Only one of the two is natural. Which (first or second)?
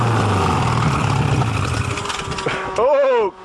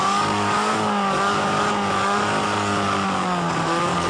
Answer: first